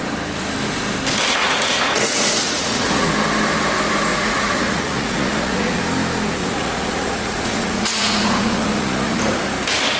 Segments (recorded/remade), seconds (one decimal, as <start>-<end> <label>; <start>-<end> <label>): 0.0-1.4 recorded; 1.4-3.1 remade; 3.1-4.1 recorded; 4.1-5.8 remade; 5.8-6.4 recorded; 6.4-9.2 remade; 9.2-10.0 recorded